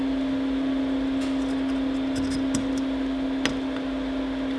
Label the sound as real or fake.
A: real